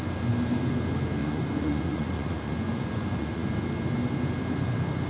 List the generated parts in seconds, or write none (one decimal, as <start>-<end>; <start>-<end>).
1.2-3.5